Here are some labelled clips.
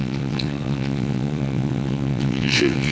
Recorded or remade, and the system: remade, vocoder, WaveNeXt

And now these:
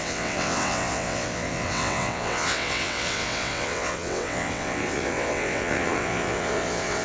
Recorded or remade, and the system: remade, vocoder, WaveNeXt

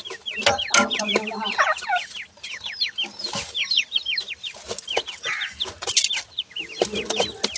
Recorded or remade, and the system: recorded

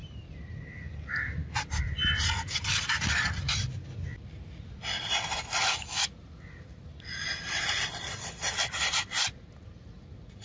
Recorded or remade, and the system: recorded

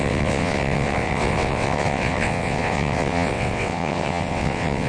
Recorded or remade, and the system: remade, vocoder, WaveNeXt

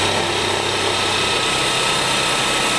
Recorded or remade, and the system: recorded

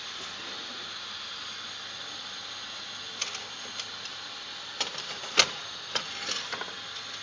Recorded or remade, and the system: recorded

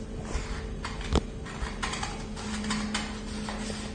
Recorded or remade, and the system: recorded